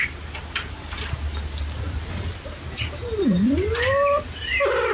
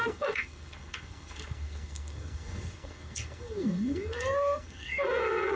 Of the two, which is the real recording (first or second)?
first